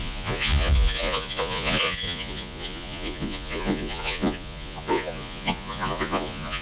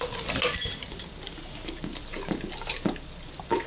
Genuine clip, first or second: second